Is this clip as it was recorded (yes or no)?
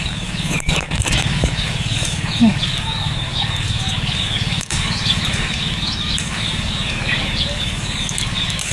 no